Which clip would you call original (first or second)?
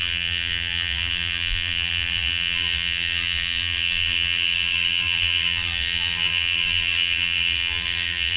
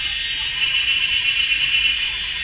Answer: second